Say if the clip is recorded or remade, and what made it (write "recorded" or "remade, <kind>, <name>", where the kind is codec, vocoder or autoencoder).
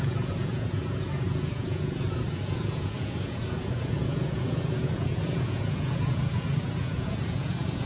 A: remade, vocoder, Vocos